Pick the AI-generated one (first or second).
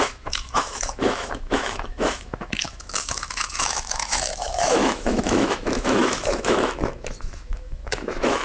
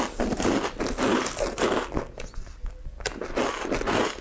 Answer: first